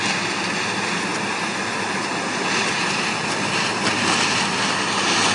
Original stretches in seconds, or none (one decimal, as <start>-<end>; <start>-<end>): 0.0-5.3